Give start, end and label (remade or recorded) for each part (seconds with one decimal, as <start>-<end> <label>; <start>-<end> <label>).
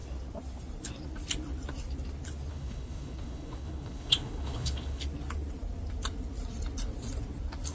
0.0-2.5 recorded; 2.5-5.0 remade; 5.0-7.7 recorded